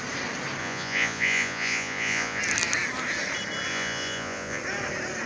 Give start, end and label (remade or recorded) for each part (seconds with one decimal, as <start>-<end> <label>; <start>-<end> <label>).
0.0-0.6 recorded; 0.6-2.4 remade; 2.4-3.7 recorded; 3.7-4.6 remade; 4.6-5.3 recorded

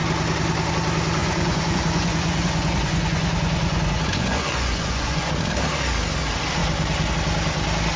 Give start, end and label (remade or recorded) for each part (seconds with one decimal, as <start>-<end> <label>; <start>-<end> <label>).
0.0-1.2 recorded; 1.2-5.3 remade; 5.3-8.0 recorded

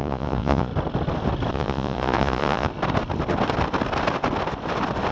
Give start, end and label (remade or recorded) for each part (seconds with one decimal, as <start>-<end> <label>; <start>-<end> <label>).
0.0-0.7 remade; 0.7-1.5 recorded; 1.5-2.7 remade; 2.7-5.1 recorded

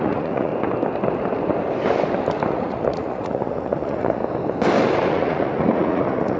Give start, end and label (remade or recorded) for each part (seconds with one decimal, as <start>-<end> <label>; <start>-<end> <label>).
0.0-0.5 remade; 0.5-2.5 recorded; 2.5-4.2 remade; 4.2-5.1 recorded; 5.1-6.4 remade

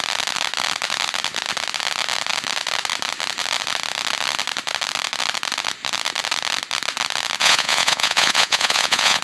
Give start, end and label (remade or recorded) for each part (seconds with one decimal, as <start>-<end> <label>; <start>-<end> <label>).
0.0-7.4 recorded; 7.4-9.2 remade

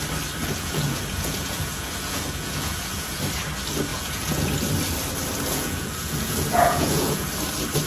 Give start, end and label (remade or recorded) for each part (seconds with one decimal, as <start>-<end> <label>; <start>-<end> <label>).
0.0-0.4 recorded; 0.4-3.2 remade; 3.2-3.9 recorded; 3.9-4.5 remade; 4.5-5.5 recorded; 5.5-7.3 remade; 7.3-7.9 recorded

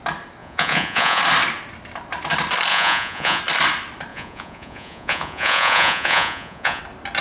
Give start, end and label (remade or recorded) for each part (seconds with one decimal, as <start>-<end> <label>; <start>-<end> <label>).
0.0-0.4 recorded; 0.4-1.2 remade; 1.2-2.7 recorded; 2.7-3.4 remade; 3.4-4.1 recorded; 4.1-6.8 remade; 6.8-7.2 recorded